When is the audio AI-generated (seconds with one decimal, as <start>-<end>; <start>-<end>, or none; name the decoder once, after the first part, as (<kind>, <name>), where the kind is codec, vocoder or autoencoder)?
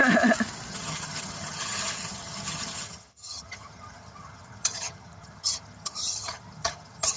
0.7-7.2 (vocoder, HiFi-GAN)